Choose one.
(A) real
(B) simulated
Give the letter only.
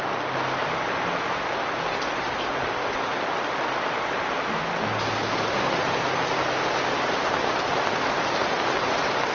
A